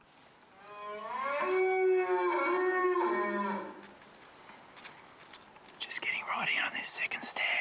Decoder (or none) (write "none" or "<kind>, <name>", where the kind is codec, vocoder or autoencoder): none